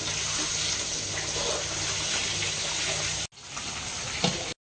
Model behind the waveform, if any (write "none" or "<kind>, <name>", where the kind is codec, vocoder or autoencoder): none